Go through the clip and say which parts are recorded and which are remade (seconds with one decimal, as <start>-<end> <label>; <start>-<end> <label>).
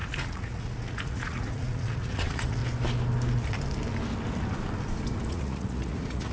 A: 0.0-2.6 remade; 2.6-5.3 recorded; 5.3-6.3 remade